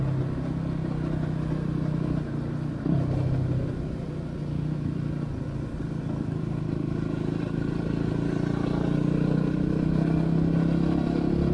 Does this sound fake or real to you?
real